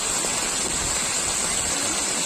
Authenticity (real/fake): real